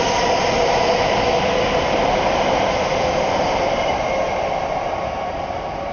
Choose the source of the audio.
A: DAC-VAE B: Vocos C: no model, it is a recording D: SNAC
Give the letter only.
C